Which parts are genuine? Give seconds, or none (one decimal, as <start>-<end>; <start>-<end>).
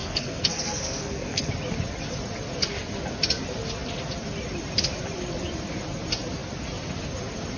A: 1.5-7.6